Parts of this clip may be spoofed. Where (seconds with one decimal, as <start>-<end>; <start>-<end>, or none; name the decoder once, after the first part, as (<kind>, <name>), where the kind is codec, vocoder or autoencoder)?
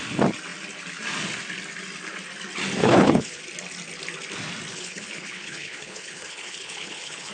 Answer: 2.8-3.4 (codec, HILCodec); 4.7-7.3